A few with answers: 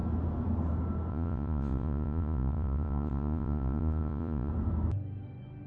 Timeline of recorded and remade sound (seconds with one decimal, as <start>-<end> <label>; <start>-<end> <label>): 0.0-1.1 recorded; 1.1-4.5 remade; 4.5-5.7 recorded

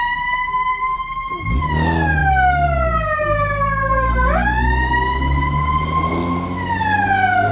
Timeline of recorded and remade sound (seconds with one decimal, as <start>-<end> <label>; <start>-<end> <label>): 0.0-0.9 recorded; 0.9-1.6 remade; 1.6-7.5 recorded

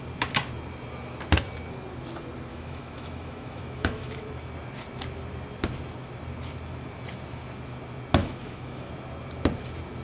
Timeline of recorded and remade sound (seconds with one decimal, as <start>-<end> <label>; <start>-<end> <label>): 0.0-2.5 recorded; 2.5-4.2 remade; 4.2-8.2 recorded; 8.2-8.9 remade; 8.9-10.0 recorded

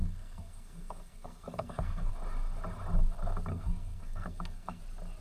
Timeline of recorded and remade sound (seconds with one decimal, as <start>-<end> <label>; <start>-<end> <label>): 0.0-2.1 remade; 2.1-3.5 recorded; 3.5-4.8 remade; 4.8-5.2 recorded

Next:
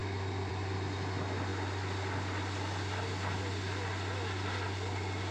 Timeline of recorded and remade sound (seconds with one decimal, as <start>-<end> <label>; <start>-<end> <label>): 0.0-5.3 recorded